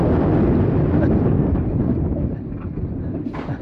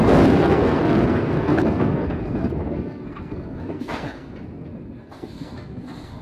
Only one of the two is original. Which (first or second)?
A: first